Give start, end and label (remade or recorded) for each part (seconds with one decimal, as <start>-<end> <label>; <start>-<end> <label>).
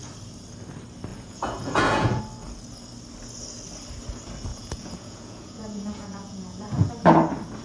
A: 0.0-1.1 recorded; 1.1-2.2 remade; 2.2-4.5 recorded; 4.5-6.9 remade; 6.9-7.6 recorded